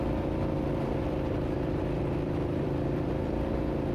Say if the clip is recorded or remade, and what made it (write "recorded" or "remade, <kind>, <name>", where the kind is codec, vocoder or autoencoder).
remade, vocoder, BigVGAN v2